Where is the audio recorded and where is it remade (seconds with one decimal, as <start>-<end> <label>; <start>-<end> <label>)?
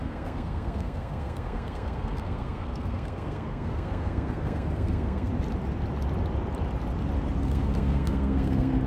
0.0-5.3 remade; 5.3-7.4 recorded; 7.4-8.9 remade